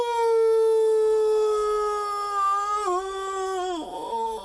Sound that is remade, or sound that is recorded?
recorded